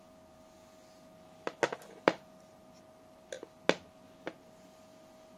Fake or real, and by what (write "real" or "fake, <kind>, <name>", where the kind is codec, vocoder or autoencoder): real